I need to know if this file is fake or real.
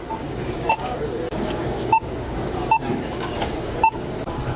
fake